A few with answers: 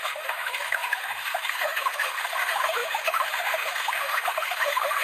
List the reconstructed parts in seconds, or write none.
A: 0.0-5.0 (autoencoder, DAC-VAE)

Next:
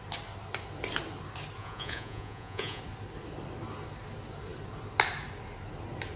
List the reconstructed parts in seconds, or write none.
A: 1.6-2.8 (vocoder, Vocos)

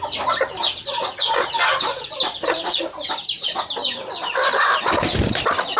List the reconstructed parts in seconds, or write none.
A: 0.6-1.5 (vocoder, Vocos); 1.9-2.8

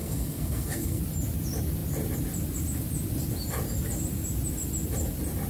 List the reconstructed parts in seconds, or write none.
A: 0.0-1.0 (codec, SNAC)